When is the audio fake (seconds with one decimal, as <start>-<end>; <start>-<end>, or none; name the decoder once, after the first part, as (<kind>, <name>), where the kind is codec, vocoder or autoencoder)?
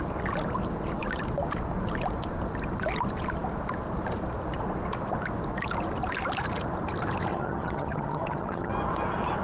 7.3-8.7 (vocoder, HiFi-GAN)